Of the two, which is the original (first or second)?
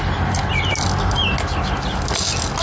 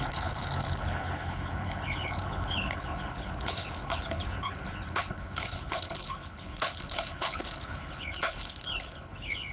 first